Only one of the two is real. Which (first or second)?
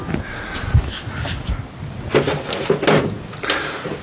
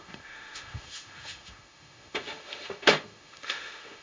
first